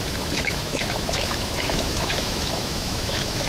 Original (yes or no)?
no